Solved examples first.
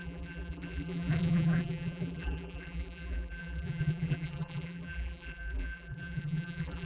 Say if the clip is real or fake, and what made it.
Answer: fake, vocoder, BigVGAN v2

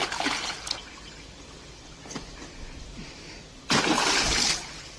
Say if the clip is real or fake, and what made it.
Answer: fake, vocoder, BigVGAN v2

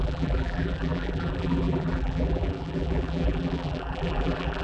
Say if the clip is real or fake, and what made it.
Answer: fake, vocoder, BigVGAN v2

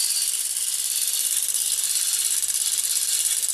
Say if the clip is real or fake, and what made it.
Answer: real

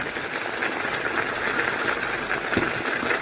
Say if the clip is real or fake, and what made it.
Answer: real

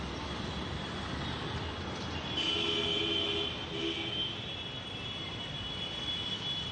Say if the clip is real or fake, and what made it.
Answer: real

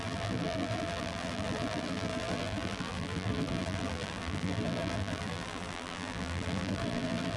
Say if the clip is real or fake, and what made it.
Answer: fake, vocoder, BigVGAN v2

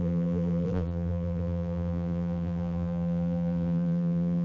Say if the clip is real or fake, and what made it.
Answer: fake, vocoder, BigVGAN v2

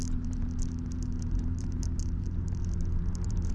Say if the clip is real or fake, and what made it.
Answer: fake, vocoder, BigVGAN v2